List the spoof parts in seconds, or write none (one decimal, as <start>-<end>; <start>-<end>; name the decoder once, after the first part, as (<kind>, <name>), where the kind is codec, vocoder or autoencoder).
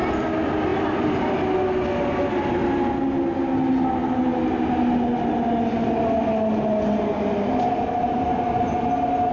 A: none